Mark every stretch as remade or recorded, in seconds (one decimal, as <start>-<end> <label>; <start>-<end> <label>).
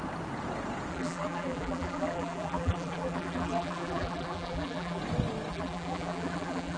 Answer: 0.0-0.9 recorded; 0.9-5.0 remade; 5.0-5.5 recorded; 5.5-6.8 remade